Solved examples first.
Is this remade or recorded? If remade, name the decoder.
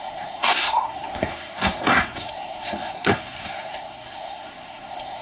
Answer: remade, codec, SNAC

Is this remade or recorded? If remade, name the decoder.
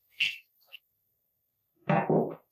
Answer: remade, codec, SNAC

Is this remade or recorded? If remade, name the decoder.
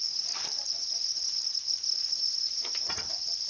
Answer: recorded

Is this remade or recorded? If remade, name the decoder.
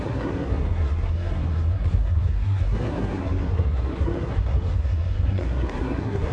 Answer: remade, codec, SNAC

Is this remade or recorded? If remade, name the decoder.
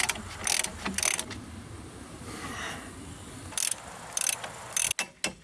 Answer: recorded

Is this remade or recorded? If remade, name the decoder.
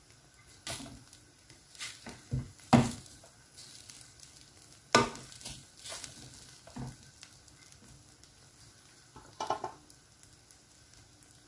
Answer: recorded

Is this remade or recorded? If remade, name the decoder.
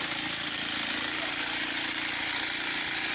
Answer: recorded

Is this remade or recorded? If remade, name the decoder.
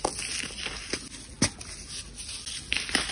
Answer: recorded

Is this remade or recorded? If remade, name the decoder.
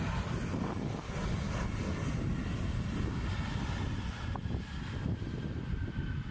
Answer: recorded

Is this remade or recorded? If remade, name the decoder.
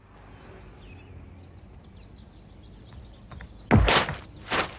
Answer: recorded